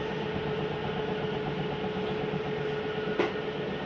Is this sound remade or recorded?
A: recorded